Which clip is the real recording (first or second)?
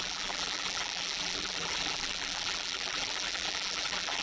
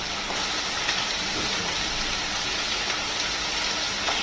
second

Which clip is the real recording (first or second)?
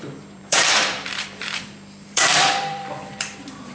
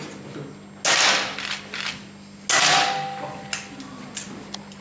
second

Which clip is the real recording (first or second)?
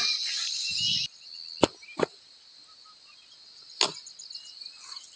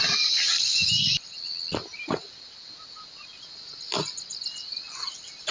first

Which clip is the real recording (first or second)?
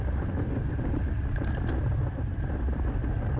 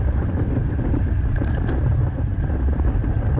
first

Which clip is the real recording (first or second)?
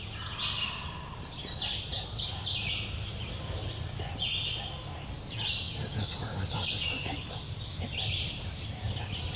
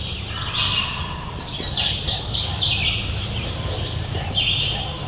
first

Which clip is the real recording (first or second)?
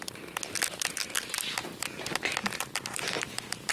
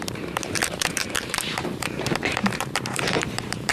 first